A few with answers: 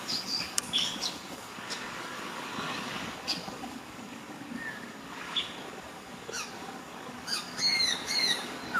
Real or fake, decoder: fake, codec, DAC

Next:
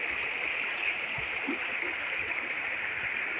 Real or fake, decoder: real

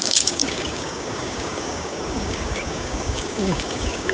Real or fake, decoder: fake, codec, DAC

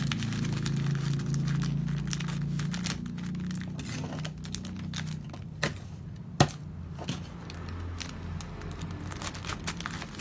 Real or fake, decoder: real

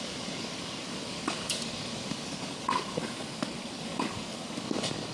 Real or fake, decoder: fake, codec, DAC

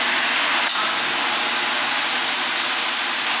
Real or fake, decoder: real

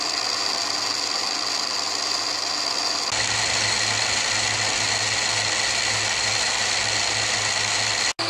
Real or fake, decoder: real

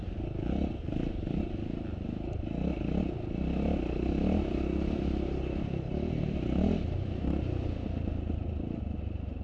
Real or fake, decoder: real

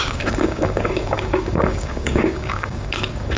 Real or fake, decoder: fake, codec, DAC